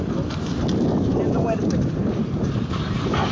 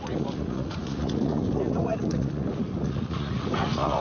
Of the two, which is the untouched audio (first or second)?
first